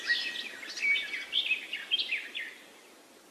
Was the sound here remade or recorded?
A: recorded